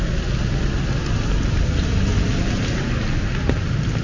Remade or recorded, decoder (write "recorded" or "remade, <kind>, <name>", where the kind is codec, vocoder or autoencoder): recorded